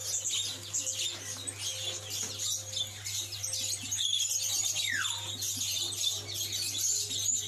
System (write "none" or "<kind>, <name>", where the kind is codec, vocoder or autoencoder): none